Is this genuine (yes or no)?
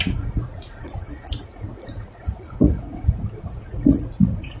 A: no